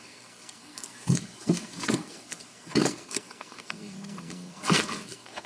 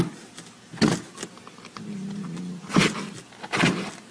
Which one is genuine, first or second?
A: second